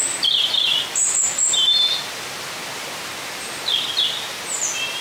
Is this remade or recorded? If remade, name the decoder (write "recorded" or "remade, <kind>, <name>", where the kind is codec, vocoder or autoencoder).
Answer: recorded